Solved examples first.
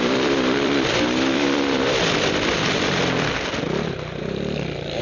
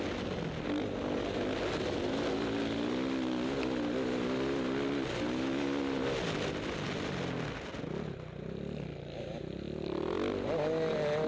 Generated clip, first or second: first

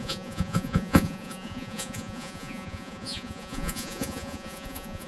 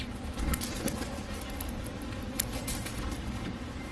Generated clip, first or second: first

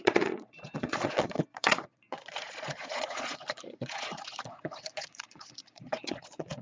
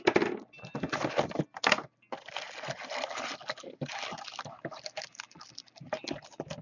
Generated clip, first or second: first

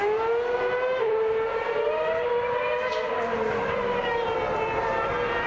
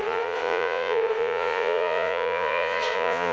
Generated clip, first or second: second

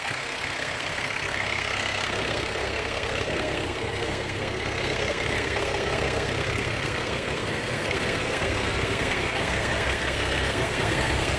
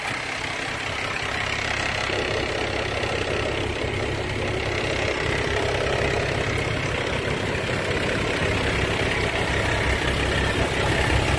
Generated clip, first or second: first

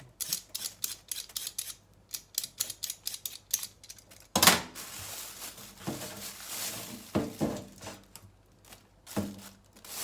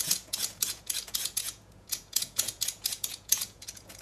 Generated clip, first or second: second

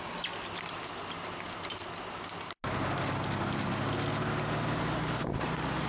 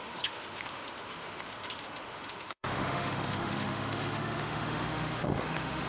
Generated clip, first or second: second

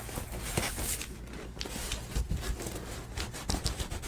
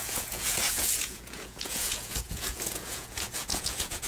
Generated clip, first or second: second